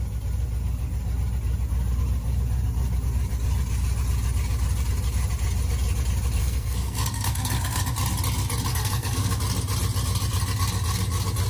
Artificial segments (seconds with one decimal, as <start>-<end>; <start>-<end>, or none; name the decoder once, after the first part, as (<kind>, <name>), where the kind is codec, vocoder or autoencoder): 6.4-7.8 (codec, SNAC); 8.7-9.4